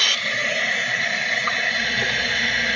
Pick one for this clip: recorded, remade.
recorded